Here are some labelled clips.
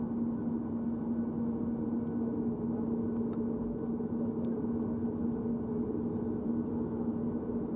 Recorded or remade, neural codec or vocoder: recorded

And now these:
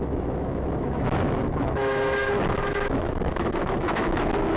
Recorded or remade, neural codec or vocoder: remade, autoencoder, DAC-VAE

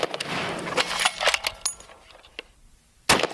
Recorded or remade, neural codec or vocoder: recorded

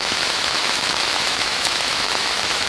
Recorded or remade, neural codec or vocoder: remade, autoencoder, DAC-VAE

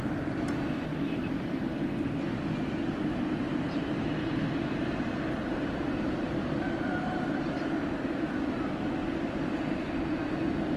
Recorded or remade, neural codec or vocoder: recorded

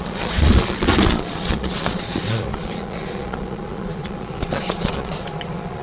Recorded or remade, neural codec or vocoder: remade, vocoder, Vocos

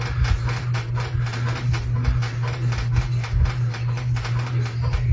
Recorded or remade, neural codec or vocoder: recorded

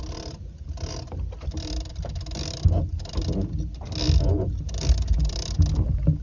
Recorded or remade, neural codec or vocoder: recorded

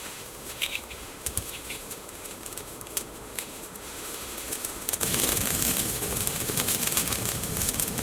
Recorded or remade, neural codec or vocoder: remade, autoencoder, DAC-VAE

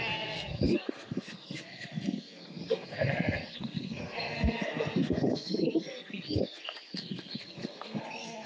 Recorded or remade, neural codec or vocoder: remade, codec, SNAC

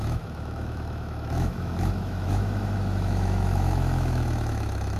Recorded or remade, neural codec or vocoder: remade, autoencoder, DAC-VAE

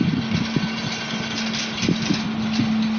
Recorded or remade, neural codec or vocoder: recorded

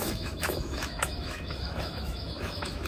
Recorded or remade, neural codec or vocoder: remade, autoencoder, DAC-VAE